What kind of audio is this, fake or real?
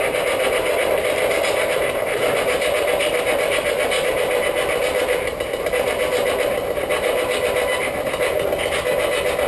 real